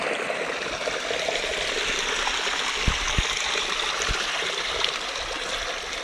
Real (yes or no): no